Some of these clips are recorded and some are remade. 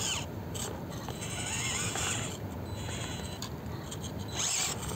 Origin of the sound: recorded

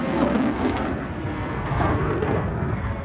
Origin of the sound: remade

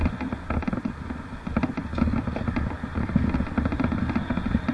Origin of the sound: recorded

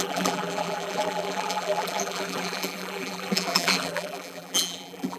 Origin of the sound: remade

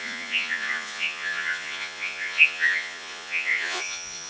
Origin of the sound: remade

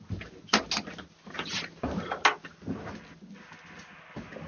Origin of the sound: recorded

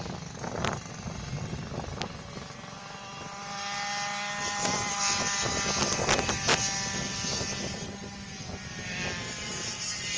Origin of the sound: recorded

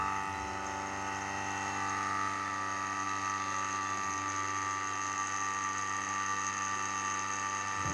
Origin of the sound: recorded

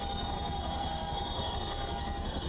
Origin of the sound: remade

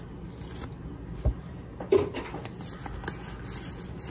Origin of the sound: recorded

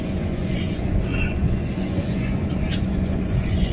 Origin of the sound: remade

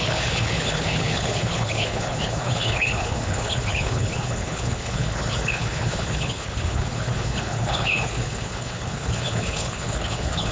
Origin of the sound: remade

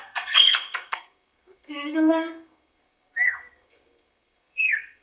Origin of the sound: remade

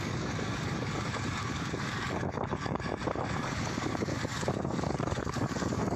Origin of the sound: remade